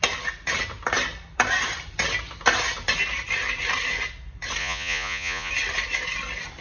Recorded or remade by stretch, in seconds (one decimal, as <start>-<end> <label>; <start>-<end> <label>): 0.0-4.6 recorded; 4.6-5.5 remade; 5.5-6.6 recorded